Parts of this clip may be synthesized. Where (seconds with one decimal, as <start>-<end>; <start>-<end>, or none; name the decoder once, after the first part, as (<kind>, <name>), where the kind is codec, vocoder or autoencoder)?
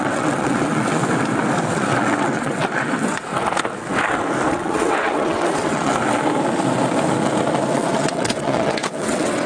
0.0-1.0 (vocoder, WaveNeXt); 1.7-3.3; 4.5-5.9; 7.7-9.5